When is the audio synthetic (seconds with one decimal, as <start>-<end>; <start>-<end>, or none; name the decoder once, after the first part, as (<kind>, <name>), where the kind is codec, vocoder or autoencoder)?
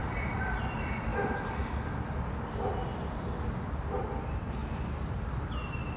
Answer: none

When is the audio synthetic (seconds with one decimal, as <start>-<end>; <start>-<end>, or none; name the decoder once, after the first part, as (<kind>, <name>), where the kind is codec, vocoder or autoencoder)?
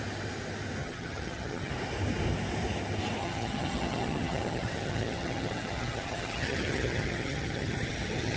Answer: 0.8-1.7 (vocoder, HiFi-GAN); 3.2-8.4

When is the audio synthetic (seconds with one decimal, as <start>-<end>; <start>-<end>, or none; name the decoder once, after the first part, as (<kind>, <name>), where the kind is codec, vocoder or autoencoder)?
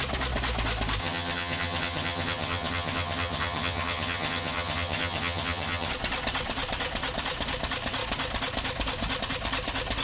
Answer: 1.0-5.9 (vocoder, HiFi-GAN)